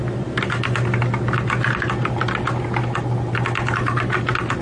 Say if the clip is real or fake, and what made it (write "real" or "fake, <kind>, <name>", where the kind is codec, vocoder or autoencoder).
real